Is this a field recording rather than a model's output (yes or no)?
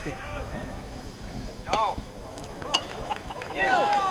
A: no